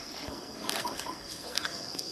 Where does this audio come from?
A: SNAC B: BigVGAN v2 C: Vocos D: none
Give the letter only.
A